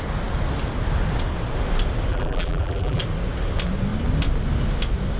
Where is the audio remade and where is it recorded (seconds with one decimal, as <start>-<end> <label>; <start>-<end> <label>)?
0.0-2.1 recorded; 2.1-3.0 remade; 3.0-5.2 recorded